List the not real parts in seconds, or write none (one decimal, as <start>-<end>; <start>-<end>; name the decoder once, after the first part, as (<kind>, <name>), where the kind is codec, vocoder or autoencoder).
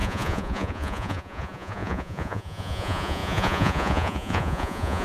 0.0-5.0 (vocoder, Vocos)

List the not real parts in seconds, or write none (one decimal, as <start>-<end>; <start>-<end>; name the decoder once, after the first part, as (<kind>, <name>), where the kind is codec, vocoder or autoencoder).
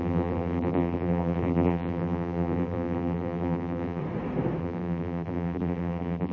0.0-4.0 (vocoder, BigVGAN v2); 4.6-6.3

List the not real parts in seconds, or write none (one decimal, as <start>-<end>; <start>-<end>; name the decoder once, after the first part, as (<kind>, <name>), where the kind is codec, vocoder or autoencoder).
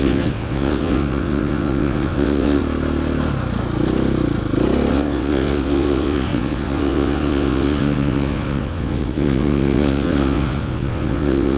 0.0-2.6 (vocoder, WaveNeXt); 4.9-11.6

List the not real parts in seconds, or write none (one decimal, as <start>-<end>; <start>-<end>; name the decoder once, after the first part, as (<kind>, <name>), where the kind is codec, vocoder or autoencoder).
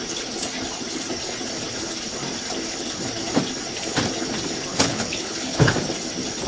4.7-5.7 (codec, HILCodec)